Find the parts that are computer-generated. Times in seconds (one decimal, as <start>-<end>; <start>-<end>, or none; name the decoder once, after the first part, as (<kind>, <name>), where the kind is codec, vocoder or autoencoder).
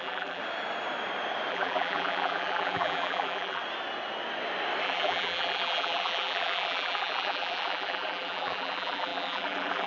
0.0-0.4 (vocoder, BigVGAN v2); 1.5-3.6; 4.8-9.9